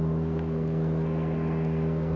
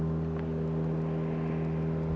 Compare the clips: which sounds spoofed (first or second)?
first